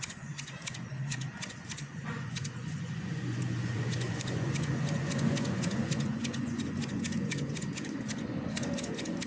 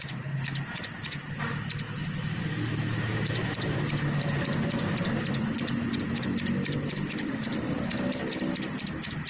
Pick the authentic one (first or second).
second